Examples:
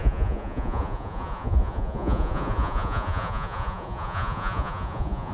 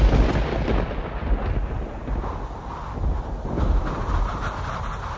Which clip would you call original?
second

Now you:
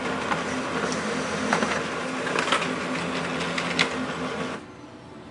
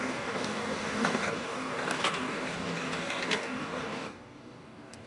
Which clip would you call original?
first